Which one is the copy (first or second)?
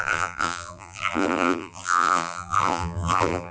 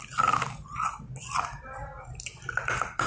first